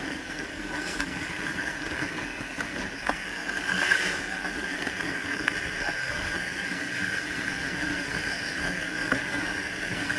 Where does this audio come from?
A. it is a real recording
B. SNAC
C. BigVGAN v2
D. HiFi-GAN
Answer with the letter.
B